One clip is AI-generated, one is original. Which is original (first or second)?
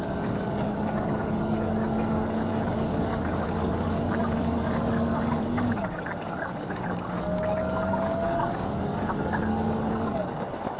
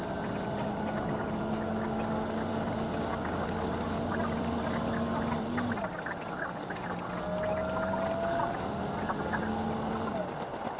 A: second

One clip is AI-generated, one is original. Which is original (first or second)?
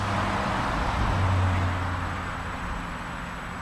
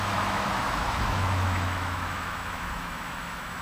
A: first